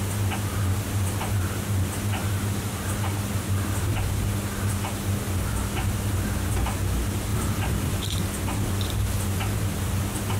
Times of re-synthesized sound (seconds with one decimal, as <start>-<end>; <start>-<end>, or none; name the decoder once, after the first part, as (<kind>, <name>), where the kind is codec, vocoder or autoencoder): 2.2-4.2 (vocoder, BigVGAN v2); 7.3-8.0